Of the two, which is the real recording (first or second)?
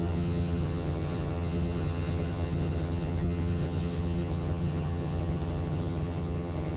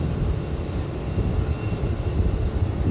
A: second